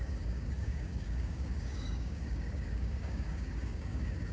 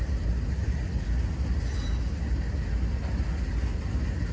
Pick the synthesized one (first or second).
first